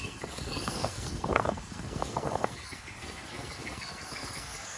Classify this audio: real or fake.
fake